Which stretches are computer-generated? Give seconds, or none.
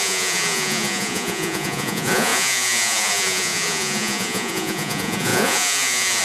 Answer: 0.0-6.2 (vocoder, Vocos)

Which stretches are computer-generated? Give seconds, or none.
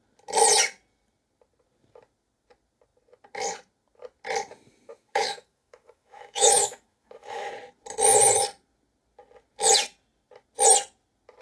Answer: 4.9-7.5 (autoencoder, DAC-VAE)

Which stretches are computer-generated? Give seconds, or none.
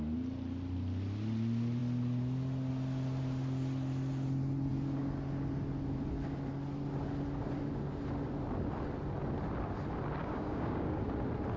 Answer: 10.2-11.0 (codec, DAC)